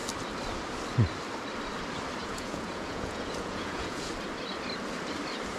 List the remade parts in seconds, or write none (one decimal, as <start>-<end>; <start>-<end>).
2.2-4.1